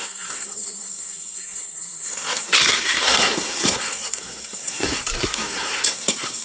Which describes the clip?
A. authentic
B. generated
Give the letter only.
B